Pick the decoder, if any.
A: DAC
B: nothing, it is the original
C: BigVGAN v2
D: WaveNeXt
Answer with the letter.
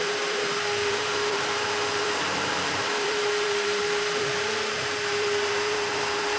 C